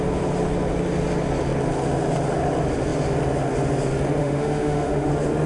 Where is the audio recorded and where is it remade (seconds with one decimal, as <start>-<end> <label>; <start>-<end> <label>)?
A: 0.0-4.2 recorded; 4.2-5.1 remade; 5.1-5.5 recorded